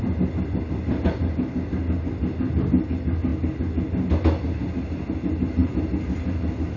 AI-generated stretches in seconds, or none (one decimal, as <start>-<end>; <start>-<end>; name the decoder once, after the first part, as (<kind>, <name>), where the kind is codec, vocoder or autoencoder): none